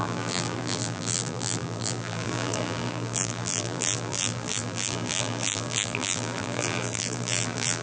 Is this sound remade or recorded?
remade